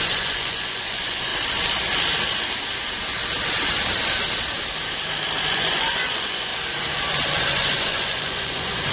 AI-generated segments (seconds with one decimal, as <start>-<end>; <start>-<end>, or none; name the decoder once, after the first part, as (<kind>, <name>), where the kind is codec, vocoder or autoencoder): 0.0-1.3 (vocoder, Vocos); 5.5-6.5; 7.0-8.9